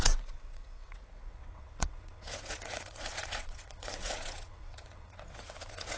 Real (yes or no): no